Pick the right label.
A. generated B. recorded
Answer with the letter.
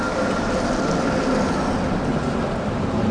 B